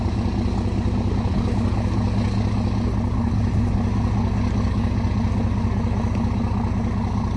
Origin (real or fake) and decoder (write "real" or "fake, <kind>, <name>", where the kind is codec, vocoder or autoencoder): real